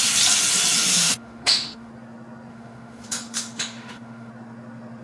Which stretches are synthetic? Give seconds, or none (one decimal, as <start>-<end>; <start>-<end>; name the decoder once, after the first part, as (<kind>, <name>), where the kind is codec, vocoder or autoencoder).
0.9-1.9 (autoencoder, DAC-VAE); 2.5-4.3